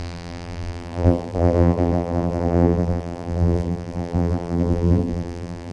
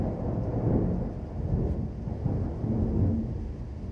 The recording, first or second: second